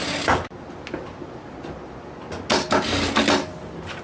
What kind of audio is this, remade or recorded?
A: recorded